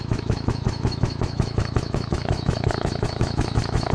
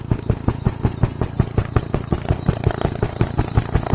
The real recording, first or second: second